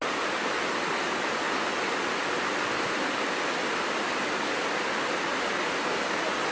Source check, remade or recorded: recorded